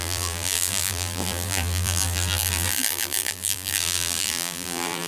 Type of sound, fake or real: fake